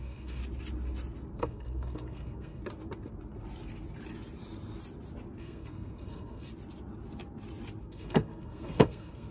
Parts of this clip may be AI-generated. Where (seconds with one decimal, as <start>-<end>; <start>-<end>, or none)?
0.0-0.4; 1.4-2.6; 5.4-6.5; 7.8-9.3